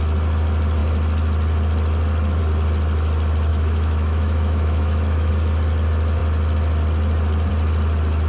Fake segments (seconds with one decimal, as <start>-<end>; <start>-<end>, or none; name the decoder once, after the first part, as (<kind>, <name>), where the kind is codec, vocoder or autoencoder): 3.5-5.3 (autoencoder, DAC-VAE)